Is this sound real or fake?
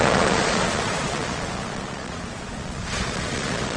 fake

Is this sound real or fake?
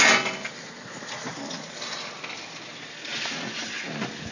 real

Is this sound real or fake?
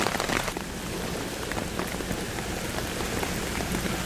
real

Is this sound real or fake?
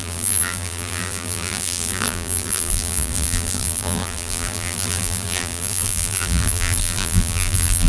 fake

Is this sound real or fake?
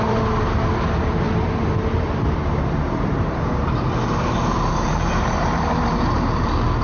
fake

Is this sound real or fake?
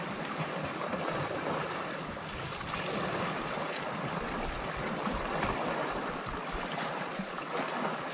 fake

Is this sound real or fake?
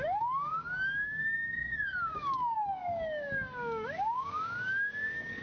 fake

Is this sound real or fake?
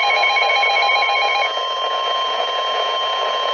fake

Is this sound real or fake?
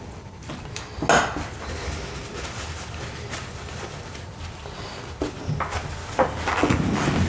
real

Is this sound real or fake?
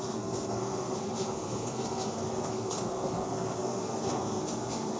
fake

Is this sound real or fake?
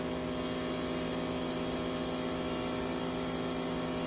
real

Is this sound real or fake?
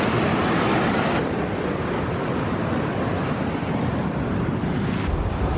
fake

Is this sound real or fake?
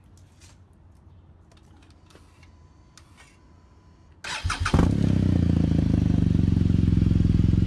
real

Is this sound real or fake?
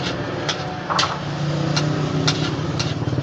real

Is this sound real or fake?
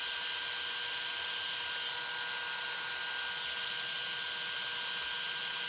real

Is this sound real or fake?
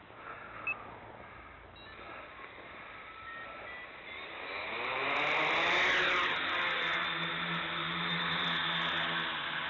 real